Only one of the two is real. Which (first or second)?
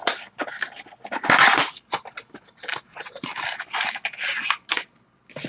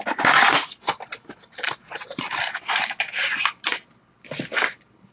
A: first